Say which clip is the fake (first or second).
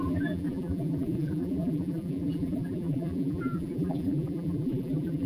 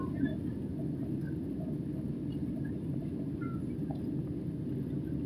first